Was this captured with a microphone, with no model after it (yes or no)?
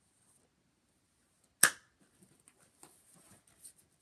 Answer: yes